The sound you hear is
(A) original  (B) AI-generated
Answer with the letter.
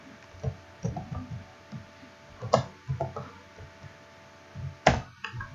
A